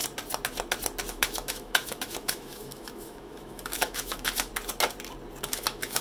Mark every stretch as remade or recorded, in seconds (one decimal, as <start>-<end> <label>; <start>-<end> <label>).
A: 0.0-1.1 recorded; 1.1-4.5 remade; 4.5-5.4 recorded; 5.4-6.0 remade